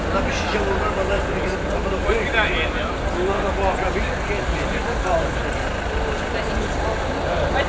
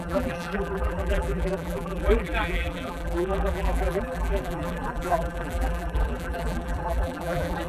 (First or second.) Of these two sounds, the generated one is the second